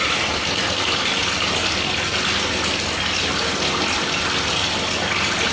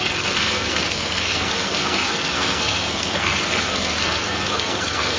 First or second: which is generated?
second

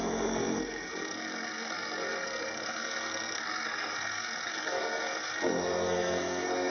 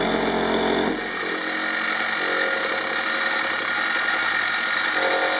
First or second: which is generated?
first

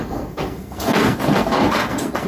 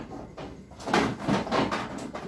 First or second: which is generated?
first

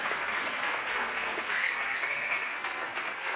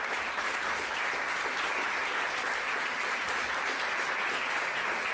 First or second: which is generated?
first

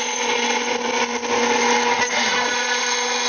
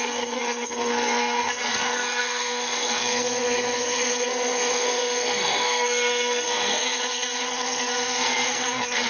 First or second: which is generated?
second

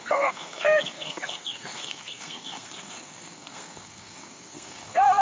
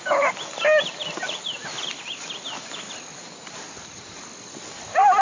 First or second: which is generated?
first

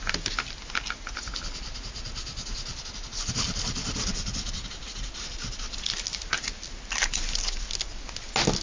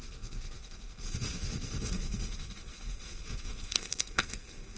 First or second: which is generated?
second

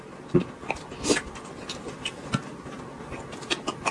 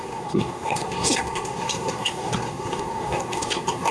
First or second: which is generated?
second